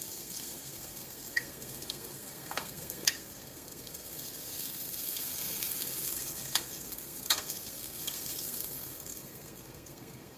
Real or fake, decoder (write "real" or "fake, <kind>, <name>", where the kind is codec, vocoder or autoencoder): fake, codec, SNAC